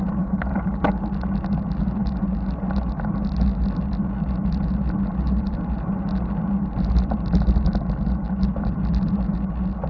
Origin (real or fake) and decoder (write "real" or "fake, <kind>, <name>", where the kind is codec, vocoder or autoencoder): real